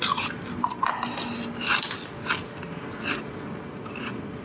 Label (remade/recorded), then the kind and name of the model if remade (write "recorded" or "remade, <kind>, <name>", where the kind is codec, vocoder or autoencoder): recorded